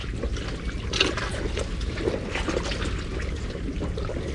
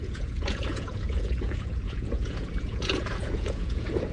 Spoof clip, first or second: second